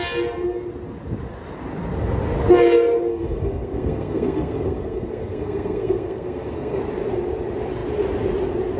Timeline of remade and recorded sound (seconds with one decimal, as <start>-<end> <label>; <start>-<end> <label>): 0.0-3.1 recorded; 3.1-6.8 remade; 6.8-8.8 recorded